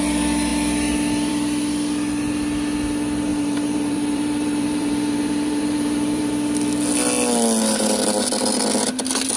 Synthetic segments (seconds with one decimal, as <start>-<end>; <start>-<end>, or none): 3.3-6.3